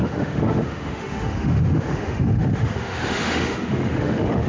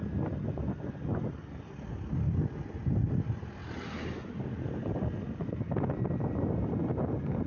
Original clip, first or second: second